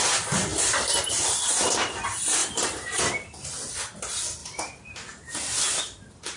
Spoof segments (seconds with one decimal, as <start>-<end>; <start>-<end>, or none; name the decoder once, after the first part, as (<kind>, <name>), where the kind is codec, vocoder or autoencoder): none